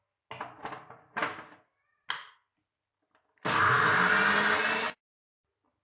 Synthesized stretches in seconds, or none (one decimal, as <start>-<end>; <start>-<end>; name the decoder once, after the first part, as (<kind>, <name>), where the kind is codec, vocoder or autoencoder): 1.2-1.9 (vocoder, BigVGAN v2)